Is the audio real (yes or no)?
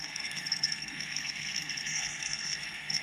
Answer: no